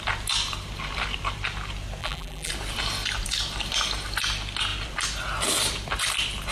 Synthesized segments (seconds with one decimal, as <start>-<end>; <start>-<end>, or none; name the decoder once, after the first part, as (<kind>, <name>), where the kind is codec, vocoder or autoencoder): 2.0-2.5 (vocoder, BigVGAN v2)